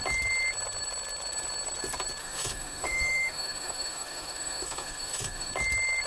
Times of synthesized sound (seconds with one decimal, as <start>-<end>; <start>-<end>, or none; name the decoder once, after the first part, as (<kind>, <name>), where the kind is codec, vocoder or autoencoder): 2.2-5.5 (autoencoder, DAC-VAE)